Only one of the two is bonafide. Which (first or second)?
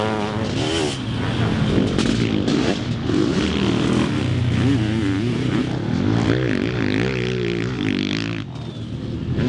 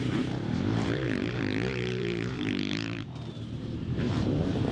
first